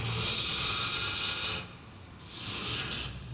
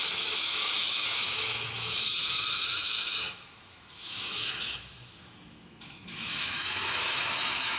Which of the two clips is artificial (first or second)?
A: second